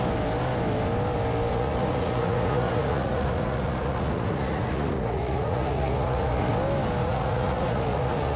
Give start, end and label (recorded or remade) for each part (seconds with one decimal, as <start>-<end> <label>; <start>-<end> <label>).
0.0-1.5 recorded; 1.5-6.5 remade; 6.5-7.0 recorded; 7.0-8.4 remade